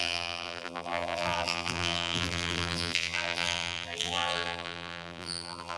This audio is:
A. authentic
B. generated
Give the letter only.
B